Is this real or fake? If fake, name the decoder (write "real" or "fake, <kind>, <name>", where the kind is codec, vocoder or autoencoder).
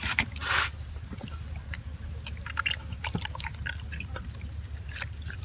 real